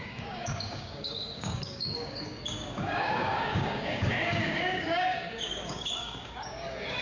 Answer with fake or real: fake